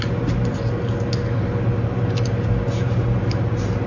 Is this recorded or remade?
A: recorded